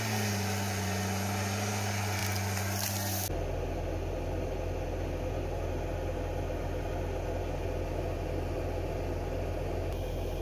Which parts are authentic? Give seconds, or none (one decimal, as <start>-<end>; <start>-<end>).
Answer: 0.0-10.4